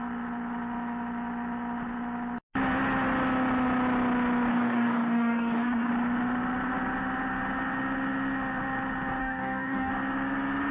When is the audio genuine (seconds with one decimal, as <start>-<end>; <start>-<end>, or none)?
0.0-4.5; 5.9-9.2; 9.9-10.7